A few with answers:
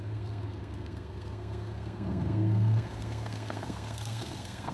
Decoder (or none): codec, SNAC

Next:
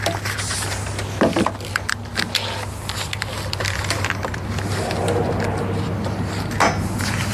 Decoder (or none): none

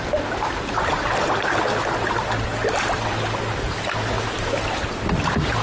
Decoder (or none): none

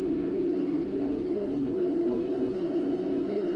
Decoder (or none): codec, SNAC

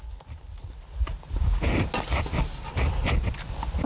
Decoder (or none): none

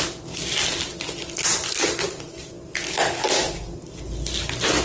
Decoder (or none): none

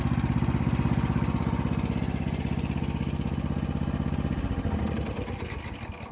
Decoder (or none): none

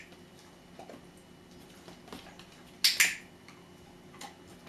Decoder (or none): none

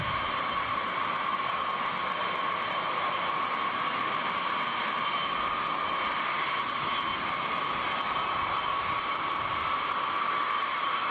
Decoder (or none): none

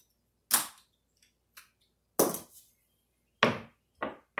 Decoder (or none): none